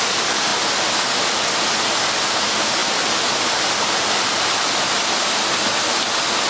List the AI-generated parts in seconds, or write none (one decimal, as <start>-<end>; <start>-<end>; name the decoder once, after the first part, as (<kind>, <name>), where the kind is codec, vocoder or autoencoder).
none

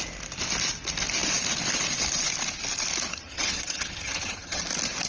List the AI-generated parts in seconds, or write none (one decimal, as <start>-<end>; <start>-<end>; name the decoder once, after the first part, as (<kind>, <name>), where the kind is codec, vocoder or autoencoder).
3.1-4.6 (vocoder, HiFi-GAN)

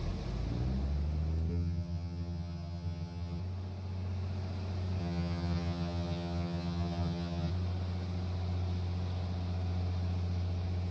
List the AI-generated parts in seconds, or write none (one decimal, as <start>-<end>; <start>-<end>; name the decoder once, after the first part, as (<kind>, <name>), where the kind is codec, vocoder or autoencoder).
1.5-3.4 (vocoder, HiFi-GAN); 5.0-7.5

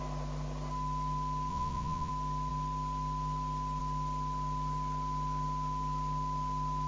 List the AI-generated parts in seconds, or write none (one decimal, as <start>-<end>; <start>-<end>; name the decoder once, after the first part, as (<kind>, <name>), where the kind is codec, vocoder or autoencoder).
1.5-2.1 (vocoder, Vocos)